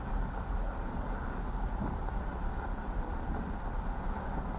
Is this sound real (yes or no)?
yes